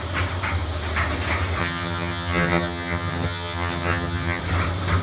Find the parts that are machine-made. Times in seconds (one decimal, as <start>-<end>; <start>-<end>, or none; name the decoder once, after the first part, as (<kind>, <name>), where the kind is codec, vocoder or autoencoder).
1.6-4.4 (vocoder, HiFi-GAN)